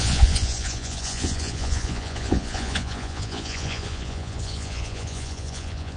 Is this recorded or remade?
remade